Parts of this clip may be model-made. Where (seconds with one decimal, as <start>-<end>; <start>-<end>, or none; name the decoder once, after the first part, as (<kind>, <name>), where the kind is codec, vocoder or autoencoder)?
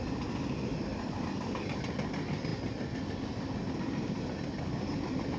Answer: none